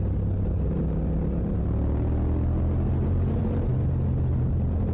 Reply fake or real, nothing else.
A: real